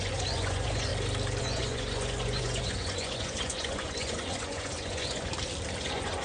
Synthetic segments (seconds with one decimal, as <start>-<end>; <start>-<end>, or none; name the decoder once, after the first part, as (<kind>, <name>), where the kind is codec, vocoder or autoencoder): 0.0-0.9 (vocoder, Vocos); 1.4-5.3; 5.8-6.2